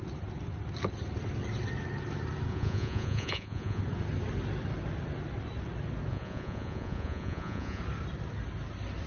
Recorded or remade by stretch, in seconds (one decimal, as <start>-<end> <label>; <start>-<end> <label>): 0.0-2.5 recorded; 2.5-3.8 remade; 3.8-6.1 recorded; 6.1-7.8 remade; 7.8-9.1 recorded